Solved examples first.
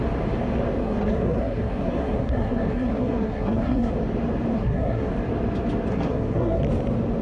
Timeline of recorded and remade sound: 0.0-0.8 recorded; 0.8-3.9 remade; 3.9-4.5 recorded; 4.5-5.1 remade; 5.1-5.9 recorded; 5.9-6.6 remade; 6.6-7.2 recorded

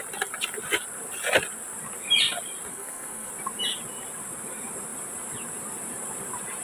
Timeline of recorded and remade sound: 0.0-2.7 recorded; 2.7-3.3 remade; 3.3-6.6 recorded

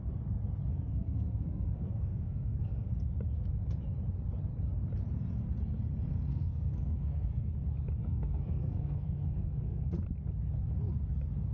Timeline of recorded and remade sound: 0.0-0.7 recorded; 0.7-2.9 remade; 2.9-6.3 recorded; 6.3-7.5 remade; 7.5-8.0 recorded; 8.0-9.9 remade; 9.9-11.5 recorded

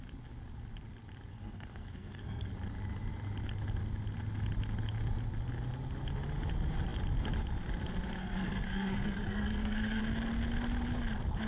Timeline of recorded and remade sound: 0.0-1.3 recorded; 1.3-2.5 remade; 2.5-8.2 recorded; 8.2-10.0 remade; 10.0-11.5 recorded

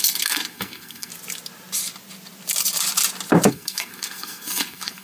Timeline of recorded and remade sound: 0.0-1.1 remade; 1.1-3.5 recorded; 3.5-5.0 remade